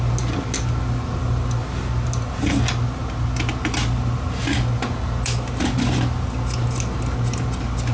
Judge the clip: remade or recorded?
recorded